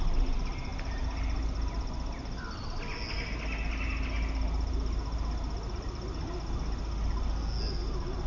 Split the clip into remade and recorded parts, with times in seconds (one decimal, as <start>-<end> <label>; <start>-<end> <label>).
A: 0.0-8.3 recorded